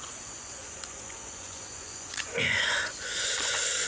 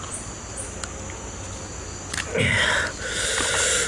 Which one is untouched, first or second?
second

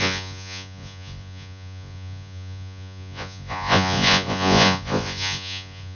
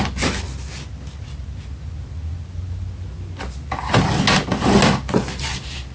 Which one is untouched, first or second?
second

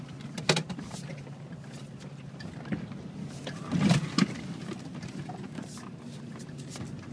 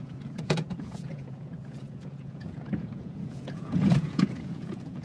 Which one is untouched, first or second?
first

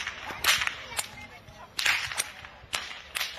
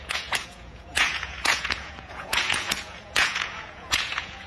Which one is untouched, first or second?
first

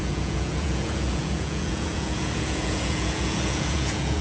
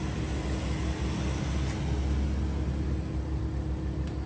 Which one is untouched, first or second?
second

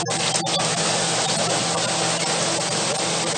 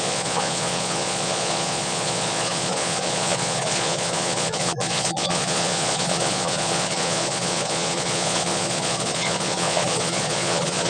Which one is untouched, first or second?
first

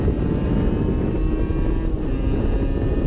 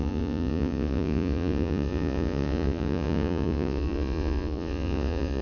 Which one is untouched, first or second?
first